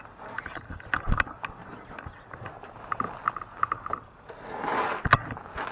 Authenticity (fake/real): real